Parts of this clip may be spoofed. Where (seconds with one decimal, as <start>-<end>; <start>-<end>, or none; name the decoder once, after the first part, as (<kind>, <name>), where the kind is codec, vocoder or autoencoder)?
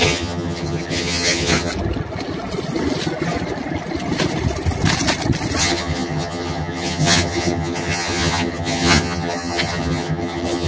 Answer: 0.0-1.7 (vocoder, HiFi-GAN); 5.6-10.7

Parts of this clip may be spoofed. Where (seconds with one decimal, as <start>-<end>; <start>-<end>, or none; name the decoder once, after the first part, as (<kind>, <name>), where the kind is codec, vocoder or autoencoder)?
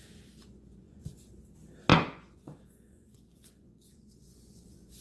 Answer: 0.4-1.3 (vocoder, Vocos); 1.9-5.0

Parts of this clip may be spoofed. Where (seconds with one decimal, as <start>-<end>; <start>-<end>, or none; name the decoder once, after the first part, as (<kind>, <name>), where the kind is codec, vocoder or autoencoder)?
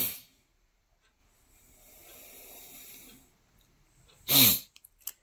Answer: none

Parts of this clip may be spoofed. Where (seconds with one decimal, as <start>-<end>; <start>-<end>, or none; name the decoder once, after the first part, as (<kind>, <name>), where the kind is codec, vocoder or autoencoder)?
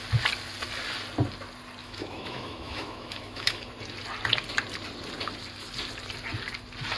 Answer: 1.8-3.7 (autoencoder, DAC-VAE)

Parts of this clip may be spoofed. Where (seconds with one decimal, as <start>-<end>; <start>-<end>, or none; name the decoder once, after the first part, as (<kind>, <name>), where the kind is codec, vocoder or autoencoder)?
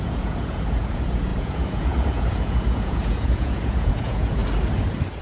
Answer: 0.0-4.4 (vocoder, Vocos)